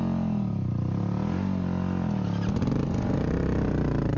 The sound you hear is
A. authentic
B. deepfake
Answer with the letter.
A